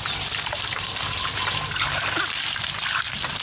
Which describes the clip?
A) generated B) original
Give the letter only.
B